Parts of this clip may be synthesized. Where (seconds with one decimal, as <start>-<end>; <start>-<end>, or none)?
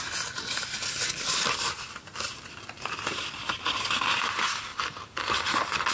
none